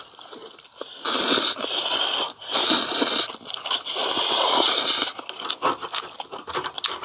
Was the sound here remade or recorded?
recorded